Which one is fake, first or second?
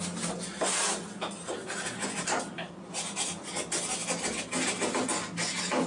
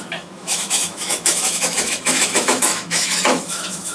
second